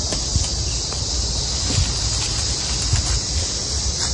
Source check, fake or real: real